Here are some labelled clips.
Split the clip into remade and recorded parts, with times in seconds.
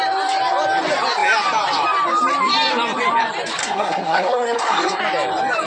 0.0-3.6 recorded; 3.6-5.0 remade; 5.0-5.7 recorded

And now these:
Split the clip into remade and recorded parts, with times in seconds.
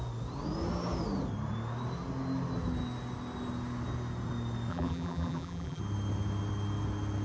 0.0-4.7 recorded; 4.7-5.8 remade; 5.8-7.2 recorded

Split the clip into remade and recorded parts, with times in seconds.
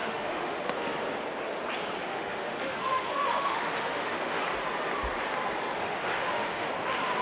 0.0-0.6 remade; 0.6-2.1 recorded; 2.1-4.4 remade; 4.4-5.8 recorded; 5.8-6.7 remade; 6.7-7.2 recorded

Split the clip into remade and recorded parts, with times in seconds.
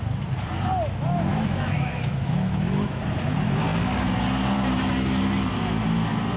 0.0-1.3 recorded; 1.3-3.0 remade; 3.0-6.4 recorded